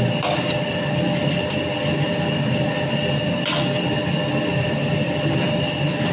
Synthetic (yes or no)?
no